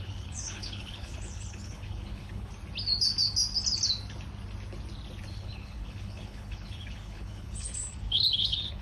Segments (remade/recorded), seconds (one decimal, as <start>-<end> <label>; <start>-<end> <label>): 0.0-2.5 remade; 2.5-5.3 recorded; 5.3-8.8 remade